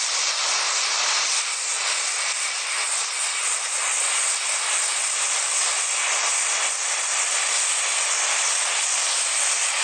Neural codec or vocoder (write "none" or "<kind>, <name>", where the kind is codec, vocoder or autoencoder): vocoder, BigVGAN v2